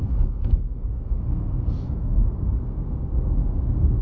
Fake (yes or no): yes